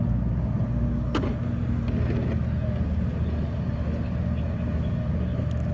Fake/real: real